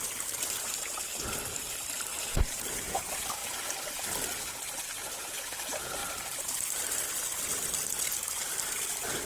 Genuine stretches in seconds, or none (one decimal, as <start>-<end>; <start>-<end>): 0.0-2.1; 3.0-6.0; 6.9-9.2